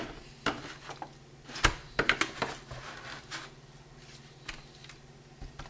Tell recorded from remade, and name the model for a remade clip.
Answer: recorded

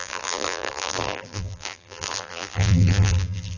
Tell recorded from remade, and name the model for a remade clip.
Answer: remade, vocoder, BigVGAN v2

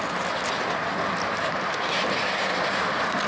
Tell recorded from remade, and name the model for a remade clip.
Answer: recorded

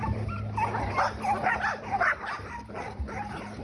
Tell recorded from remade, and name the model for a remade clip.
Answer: remade, vocoder, BigVGAN v2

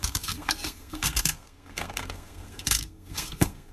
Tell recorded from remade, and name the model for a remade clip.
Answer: remade, codec, SNAC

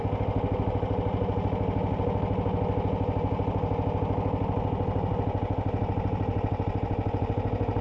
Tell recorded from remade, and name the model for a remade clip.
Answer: recorded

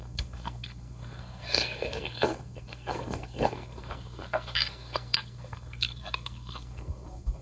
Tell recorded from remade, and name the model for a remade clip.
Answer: remade, codec, SNAC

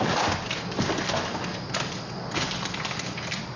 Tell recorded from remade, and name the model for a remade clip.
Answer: recorded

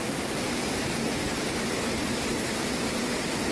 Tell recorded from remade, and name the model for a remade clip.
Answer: recorded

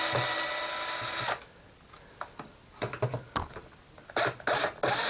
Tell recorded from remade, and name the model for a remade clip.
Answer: recorded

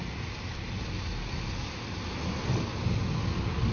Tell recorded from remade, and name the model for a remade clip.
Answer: recorded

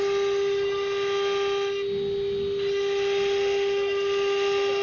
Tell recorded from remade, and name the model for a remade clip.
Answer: recorded